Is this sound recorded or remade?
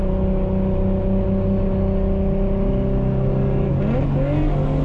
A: recorded